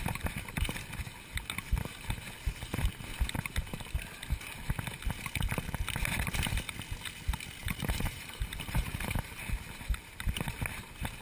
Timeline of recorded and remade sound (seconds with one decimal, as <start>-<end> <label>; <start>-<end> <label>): 0.0-7.6 recorded; 7.6-9.4 remade; 9.4-11.2 recorded